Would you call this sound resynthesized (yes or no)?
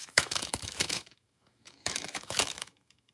yes